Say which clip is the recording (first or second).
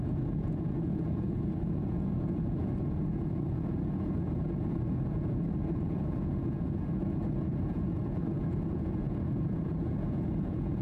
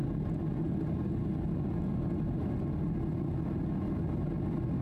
second